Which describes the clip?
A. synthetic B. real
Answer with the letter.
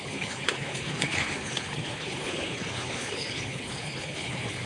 A